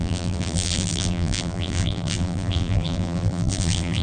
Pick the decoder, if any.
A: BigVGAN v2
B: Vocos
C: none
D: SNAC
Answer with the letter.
A